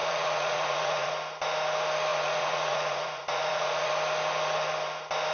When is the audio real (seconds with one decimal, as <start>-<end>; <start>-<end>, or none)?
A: 1.1-2.1; 3.9-5.3